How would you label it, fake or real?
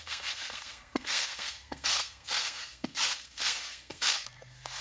fake